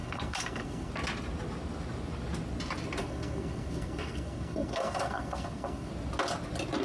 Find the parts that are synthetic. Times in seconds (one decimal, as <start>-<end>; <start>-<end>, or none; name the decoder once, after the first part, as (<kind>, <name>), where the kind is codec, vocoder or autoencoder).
0.0-0.9 (codec, SNAC); 3.0-5.9